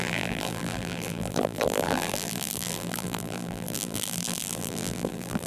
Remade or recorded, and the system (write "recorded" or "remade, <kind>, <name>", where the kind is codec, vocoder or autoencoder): remade, vocoder, BigVGAN v2